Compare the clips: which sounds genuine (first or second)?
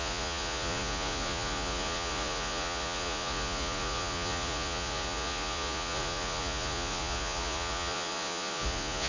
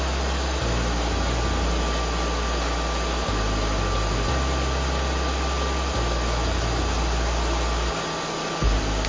second